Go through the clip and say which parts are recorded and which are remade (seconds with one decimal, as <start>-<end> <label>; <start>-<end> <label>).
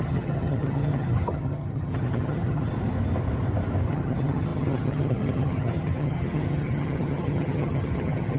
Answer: 0.0-2.7 remade; 2.7-3.9 recorded; 3.9-8.4 remade